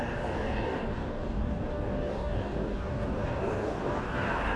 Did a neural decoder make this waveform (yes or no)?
yes